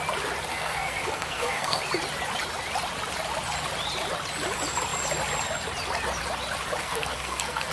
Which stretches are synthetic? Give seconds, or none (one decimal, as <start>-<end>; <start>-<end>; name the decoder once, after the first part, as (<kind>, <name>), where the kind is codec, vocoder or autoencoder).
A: 0.5-1.8 (codec, SNAC); 6.8-7.7